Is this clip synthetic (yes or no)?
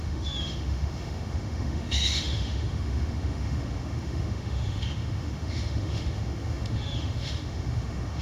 yes